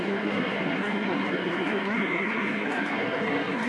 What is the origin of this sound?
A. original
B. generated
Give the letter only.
B